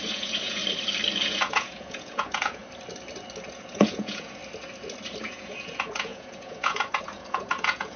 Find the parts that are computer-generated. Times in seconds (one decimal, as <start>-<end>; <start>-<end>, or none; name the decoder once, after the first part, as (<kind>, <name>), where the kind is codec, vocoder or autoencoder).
0.0-0.6 (vocoder, Vocos); 1.3-2.6; 3.5-4.4; 5.2-8.0